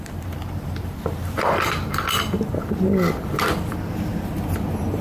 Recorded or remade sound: recorded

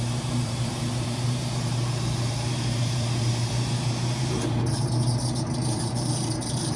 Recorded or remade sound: remade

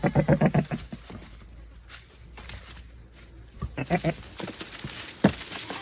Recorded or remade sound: recorded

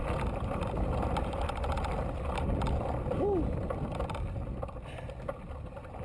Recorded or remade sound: recorded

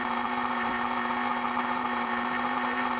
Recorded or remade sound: remade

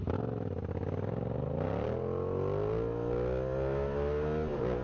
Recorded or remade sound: recorded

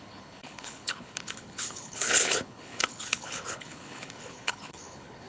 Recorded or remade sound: remade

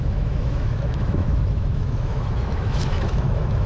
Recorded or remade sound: remade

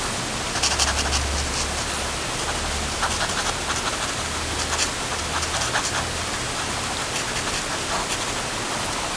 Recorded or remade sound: recorded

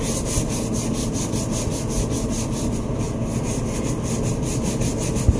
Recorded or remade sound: recorded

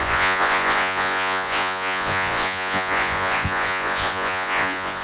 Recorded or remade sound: remade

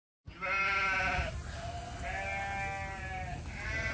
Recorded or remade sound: recorded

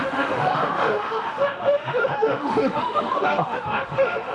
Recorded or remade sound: remade